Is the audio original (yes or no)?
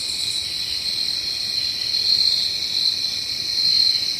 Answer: yes